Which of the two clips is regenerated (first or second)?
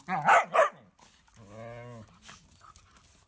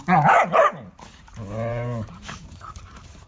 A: second